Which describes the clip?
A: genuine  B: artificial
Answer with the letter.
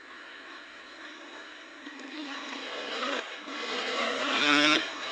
B